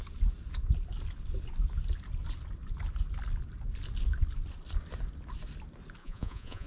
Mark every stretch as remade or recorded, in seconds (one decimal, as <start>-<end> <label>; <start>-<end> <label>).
0.0-6.0 recorded; 6.0-6.7 remade